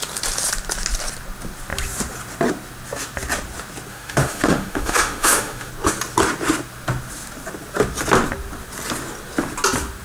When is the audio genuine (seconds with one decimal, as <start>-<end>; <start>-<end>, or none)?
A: 0.0-3.9; 5.7-10.0